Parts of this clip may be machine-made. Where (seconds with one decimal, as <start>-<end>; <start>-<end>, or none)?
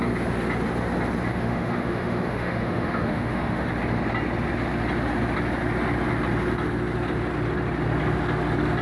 1.3-3.7